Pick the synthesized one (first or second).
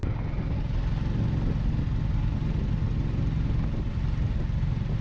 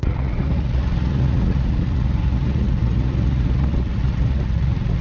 second